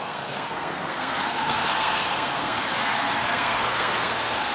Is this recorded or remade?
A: remade